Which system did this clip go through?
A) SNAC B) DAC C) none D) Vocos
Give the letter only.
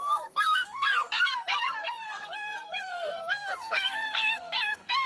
A